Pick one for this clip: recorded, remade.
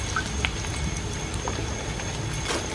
recorded